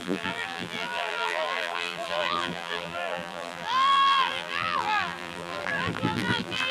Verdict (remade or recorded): remade